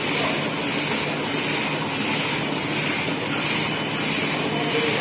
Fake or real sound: real